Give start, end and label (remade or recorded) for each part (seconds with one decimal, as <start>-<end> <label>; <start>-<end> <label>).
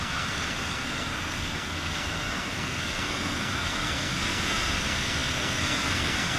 0.0-6.4 remade